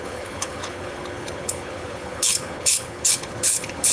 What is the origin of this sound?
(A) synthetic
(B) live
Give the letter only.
A